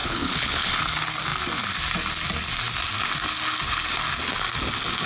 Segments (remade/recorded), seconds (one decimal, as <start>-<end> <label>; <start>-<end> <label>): 0.0-0.7 remade; 0.7-5.1 recorded